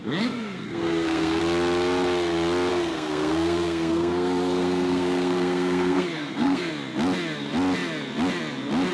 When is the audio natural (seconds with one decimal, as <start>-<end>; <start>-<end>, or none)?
1.4-2.7; 6.7-8.9